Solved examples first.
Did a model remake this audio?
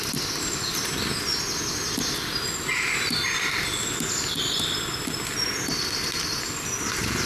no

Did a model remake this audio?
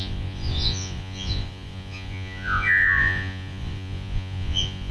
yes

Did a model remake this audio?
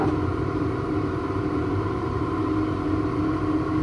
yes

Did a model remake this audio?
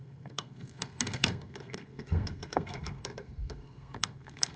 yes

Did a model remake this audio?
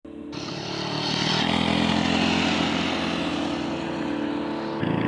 no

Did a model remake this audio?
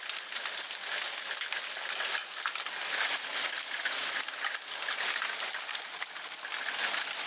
no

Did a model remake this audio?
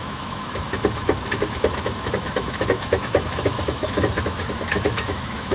yes